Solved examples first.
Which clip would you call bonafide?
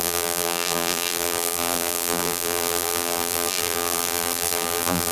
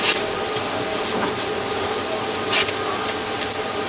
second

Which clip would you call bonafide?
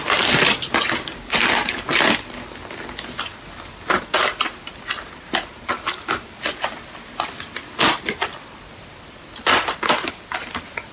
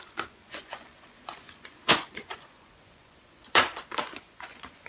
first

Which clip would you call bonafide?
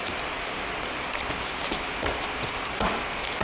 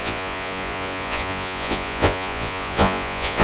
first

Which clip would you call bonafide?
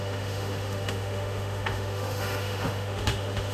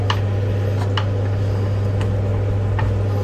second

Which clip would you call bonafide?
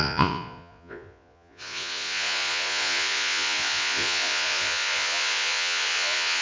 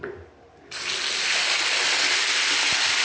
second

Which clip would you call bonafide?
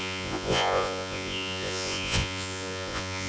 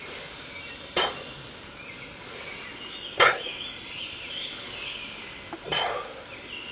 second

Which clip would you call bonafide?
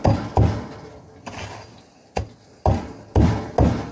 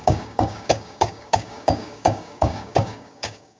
first